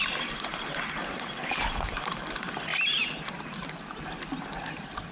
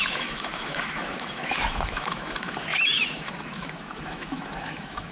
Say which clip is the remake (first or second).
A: second